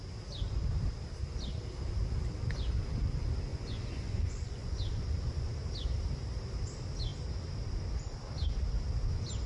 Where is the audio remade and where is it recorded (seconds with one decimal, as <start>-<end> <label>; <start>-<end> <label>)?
0.0-3.5 recorded; 3.5-5.5 remade; 5.5-9.5 recorded